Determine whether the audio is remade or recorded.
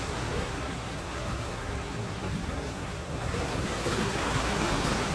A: remade